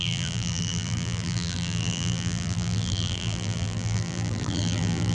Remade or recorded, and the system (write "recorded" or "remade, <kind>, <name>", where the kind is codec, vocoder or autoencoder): remade, vocoder, BigVGAN v2